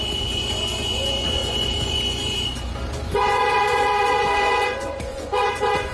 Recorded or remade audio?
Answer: remade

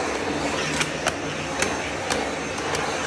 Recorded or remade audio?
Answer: recorded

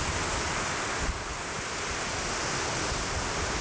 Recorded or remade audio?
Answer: recorded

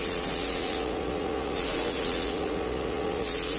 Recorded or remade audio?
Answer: remade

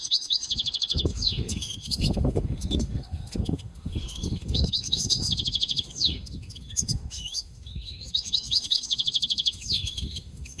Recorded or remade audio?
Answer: remade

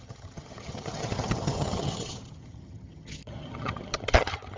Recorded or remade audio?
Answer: remade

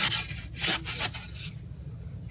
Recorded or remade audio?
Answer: recorded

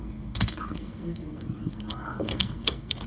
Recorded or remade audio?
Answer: remade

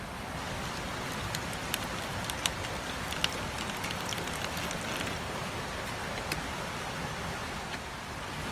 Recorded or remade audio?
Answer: recorded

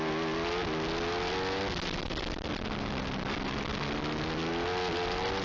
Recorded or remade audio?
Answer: recorded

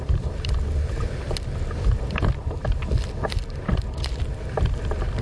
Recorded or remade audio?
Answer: recorded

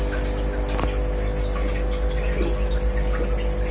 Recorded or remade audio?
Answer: recorded